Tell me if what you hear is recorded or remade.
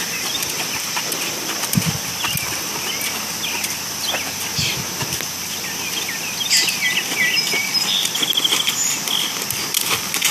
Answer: recorded